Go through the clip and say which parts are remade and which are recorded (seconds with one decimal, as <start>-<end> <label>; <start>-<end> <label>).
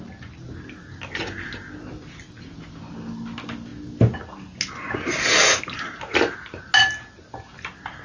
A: 0.0-8.0 recorded